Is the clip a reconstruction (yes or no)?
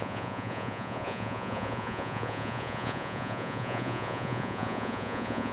yes